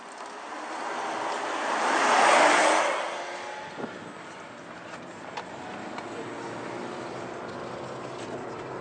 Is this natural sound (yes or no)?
yes